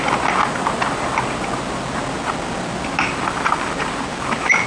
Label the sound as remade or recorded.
recorded